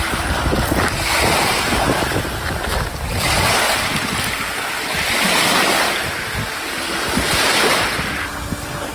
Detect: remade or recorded recorded